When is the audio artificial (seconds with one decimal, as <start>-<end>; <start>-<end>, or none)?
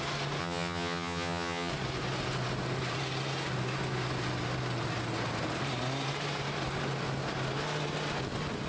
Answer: 0.4-1.7